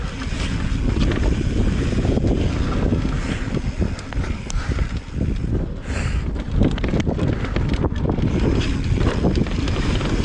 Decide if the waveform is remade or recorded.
recorded